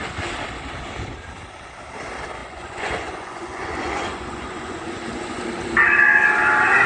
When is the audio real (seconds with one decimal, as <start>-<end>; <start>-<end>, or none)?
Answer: 0.0-2.4; 5.4-6.9